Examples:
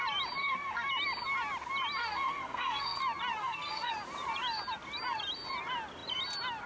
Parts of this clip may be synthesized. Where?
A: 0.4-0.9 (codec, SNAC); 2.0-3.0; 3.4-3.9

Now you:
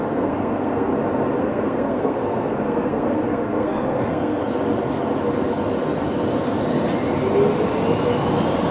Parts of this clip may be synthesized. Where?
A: 0.0-0.9 (codec, SNAC); 1.4-4.4

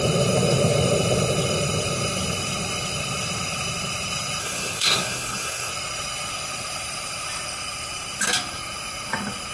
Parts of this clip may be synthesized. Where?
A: 4.4-5.7 (codec, SNAC)

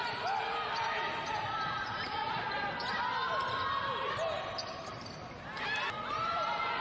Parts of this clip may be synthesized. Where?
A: none

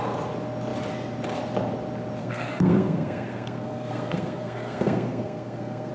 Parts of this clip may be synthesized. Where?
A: 2.2-5.9 (codec, SNAC)

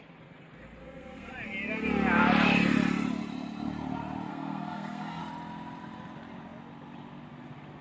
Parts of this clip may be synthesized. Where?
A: 0.8-1.3 (codec, SNAC); 4.3-5.2

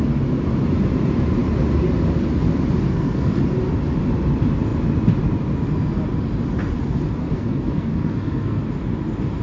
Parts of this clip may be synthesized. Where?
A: 2.9-3.4 (codec, SNAC); 7.2-8.6

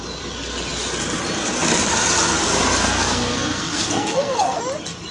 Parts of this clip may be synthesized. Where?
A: 2.8-4.6 (codec, SNAC)